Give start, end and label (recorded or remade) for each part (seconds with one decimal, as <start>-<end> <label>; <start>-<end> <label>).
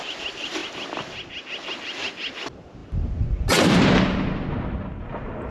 0.0-5.5 recorded